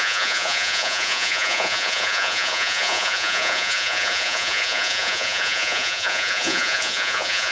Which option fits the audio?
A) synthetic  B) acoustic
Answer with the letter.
A